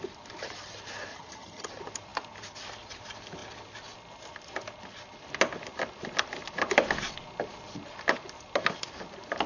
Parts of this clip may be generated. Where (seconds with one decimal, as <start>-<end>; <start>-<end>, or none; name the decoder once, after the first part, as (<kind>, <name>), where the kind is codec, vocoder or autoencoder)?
1.1-1.7 (vocoder, HiFi-GAN)

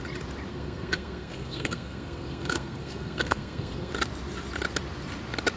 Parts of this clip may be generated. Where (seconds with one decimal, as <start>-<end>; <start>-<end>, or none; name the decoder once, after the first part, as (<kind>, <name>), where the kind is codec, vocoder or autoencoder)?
0.5-3.9 (codec, SNAC)

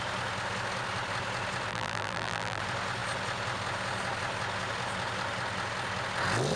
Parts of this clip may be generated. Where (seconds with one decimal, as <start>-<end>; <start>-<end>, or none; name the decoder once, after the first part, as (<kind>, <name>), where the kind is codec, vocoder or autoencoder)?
1.7-2.6 (vocoder, BigVGAN v2)

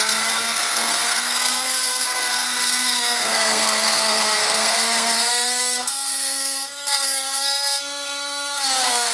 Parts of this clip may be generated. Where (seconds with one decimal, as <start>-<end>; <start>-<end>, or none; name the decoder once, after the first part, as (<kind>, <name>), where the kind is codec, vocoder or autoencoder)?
0.0-9.1 (codec, SNAC)

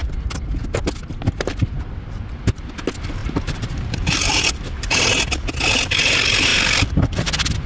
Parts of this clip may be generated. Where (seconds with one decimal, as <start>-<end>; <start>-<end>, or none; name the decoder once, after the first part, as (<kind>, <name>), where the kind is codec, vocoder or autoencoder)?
3.2-4.8 (vocoder, BigVGAN v2)

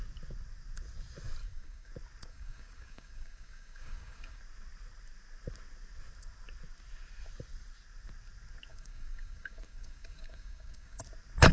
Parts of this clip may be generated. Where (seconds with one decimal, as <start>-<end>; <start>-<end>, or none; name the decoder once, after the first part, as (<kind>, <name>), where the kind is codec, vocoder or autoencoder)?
1.4-1.9 (codec, DAC); 2.3-4.4; 8.7-11.0

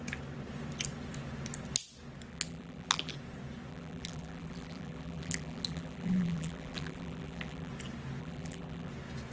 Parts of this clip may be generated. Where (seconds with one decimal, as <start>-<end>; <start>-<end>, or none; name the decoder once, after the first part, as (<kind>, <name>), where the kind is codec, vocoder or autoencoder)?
2.3-3.1 (vocoder, BigVGAN v2); 3.7-7.7; 8.2-8.9